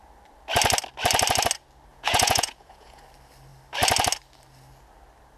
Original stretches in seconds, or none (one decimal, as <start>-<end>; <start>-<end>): 0.0-1.9; 3.0-5.4